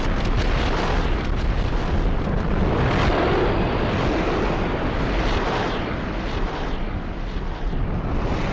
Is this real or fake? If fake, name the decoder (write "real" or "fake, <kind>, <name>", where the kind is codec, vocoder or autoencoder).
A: real